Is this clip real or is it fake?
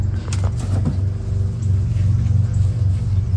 real